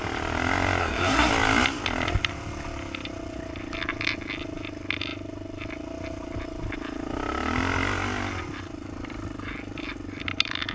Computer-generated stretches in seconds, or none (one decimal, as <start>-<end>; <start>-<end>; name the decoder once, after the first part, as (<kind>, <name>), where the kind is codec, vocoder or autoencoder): 0.8-1.3 (codec, SNAC)